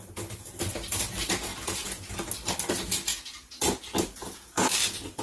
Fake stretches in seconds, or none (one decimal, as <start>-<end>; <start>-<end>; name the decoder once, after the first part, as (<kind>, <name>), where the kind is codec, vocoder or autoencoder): 1.5-2.1 (vocoder, Vocos); 3.1-4.7